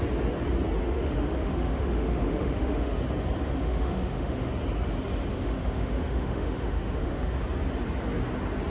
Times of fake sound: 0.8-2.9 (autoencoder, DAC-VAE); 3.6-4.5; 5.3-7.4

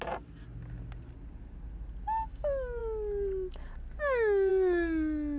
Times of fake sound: none